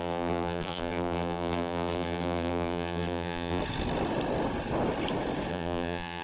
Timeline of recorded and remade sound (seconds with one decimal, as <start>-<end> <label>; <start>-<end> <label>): 0.0-3.6 remade; 3.6-5.5 recorded; 5.5-6.2 remade